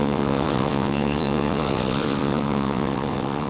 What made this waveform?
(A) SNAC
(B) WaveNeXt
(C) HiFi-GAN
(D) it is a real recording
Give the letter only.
B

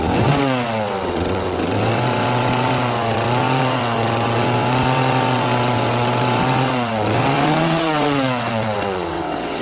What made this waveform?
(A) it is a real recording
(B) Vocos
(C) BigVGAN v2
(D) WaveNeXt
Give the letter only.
D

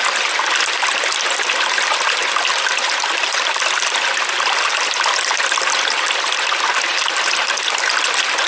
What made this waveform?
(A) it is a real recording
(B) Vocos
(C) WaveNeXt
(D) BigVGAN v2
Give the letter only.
A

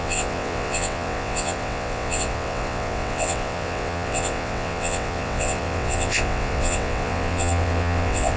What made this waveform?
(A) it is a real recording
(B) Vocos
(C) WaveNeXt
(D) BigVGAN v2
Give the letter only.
C